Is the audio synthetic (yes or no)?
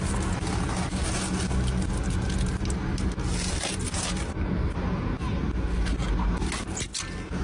no